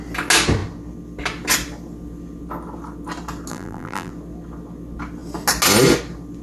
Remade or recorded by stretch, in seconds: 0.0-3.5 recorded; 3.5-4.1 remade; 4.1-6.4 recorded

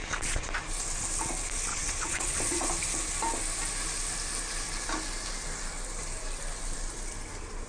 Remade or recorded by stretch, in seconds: 0.0-1.7 recorded; 1.7-2.7 remade; 2.7-7.7 recorded

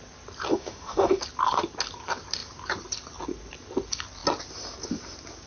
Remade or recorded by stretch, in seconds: 0.0-0.5 recorded; 0.5-1.2 remade; 1.2-5.5 recorded

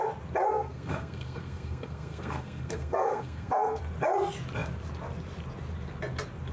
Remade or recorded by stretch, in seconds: 0.0-0.5 recorded; 0.5-3.8 remade; 3.8-6.5 recorded

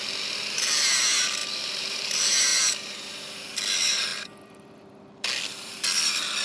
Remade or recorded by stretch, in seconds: 0.0-1.4 recorded; 1.4-2.1 remade; 2.1-2.5 recorded; 2.5-3.4 remade; 3.4-4.1 recorded; 4.1-5.8 remade; 5.8-6.4 recorded

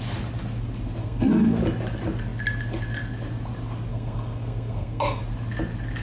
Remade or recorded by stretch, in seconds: 0.0-1.0 recorded; 1.0-1.6 remade; 1.6-3.9 recorded; 3.9-5.2 remade; 5.2-6.0 recorded